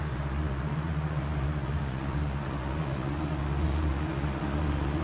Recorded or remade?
remade